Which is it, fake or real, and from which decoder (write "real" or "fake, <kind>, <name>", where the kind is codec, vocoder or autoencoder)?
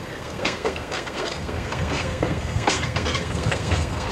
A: fake, codec, SNAC